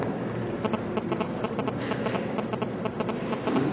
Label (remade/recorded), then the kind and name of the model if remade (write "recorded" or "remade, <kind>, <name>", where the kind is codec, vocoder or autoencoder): recorded